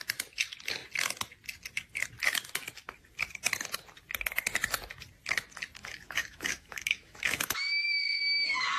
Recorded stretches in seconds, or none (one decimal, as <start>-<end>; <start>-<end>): 0.0-5.8; 8.2-8.8